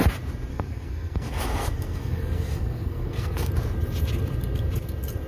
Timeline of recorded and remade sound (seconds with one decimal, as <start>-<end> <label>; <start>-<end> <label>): 0.0-0.5 recorded; 0.5-3.5 remade; 3.5-5.3 recorded